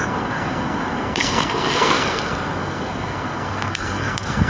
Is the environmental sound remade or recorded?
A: remade